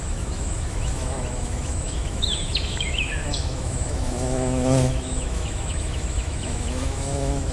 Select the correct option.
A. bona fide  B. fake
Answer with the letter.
B